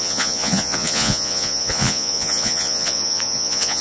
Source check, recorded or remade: remade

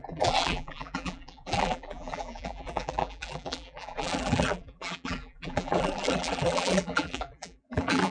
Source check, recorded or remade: remade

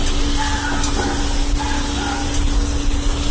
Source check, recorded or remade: recorded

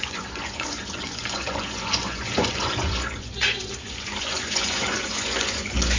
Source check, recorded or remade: remade